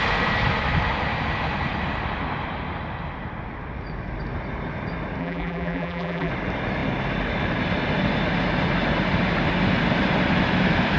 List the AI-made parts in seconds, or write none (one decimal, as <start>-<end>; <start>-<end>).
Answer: 5.2-6.3